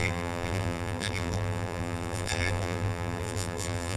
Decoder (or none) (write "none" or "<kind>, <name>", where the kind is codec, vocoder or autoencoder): vocoder, BigVGAN v2